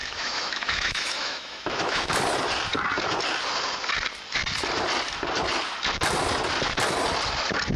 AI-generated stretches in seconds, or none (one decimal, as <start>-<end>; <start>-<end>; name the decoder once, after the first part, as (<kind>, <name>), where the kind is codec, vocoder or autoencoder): 0.0-2.2 (autoencoder, DAC-VAE)